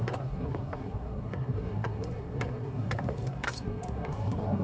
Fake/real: fake